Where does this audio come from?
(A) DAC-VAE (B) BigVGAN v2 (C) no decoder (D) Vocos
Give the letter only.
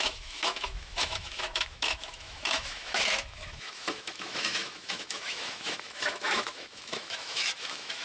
A